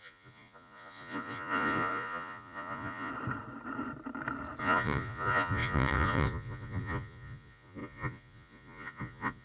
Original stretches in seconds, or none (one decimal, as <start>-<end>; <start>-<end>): 3.1-4.6